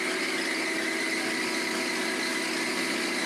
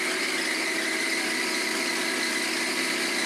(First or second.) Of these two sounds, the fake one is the second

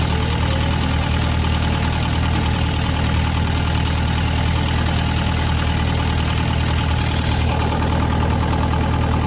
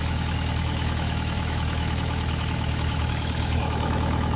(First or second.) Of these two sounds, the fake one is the second